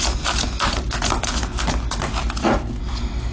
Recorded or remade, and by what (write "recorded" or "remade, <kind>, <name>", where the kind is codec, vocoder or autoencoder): recorded